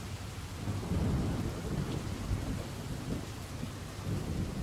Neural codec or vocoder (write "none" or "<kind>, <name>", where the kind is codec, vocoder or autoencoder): none